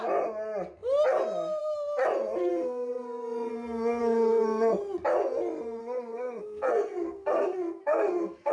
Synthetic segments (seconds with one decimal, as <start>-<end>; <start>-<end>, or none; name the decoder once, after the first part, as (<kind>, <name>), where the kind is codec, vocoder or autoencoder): 2.5-3.5 (codec, SNAC); 4.0-4.8; 5.8-8.5